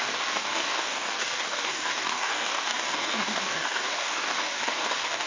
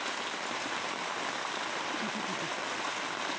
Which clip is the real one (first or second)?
second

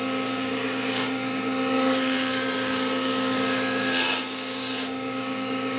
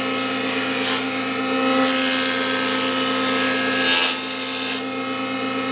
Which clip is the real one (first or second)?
second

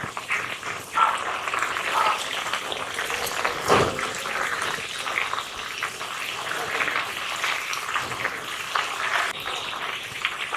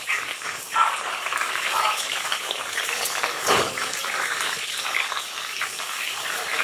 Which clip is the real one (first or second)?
first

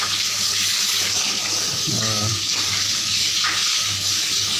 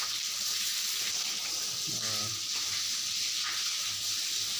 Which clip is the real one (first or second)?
second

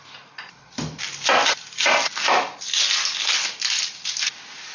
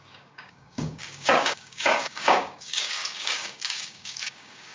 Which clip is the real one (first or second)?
first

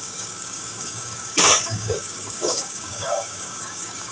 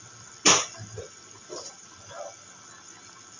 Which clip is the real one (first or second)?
second